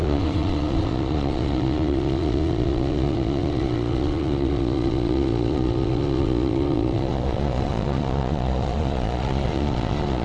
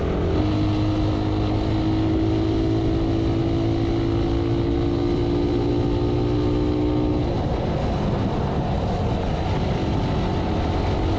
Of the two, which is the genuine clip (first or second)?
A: second